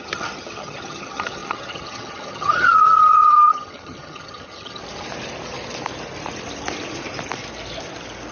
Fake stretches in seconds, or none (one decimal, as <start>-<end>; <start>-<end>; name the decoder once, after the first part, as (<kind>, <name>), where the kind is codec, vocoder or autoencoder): 0.0-4.8 (vocoder, HiFi-GAN)